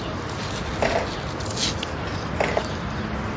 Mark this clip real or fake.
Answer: real